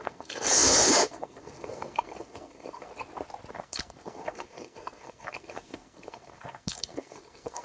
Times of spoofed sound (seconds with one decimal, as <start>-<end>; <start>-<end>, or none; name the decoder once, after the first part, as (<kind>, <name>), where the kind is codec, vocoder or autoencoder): 0.0-2.9 (codec, SNAC); 3.5-7.6